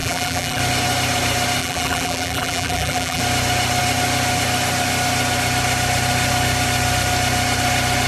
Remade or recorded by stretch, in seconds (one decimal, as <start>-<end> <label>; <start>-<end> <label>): 0.0-0.6 remade; 0.6-1.6 recorded; 1.6-3.2 remade; 3.2-8.1 recorded